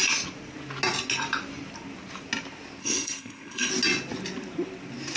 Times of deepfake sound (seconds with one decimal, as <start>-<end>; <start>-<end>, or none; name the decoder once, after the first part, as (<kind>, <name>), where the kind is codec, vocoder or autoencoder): 2.8-3.7 (codec, SNAC)